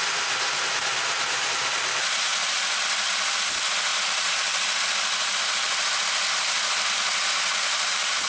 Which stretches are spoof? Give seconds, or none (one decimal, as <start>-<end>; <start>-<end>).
none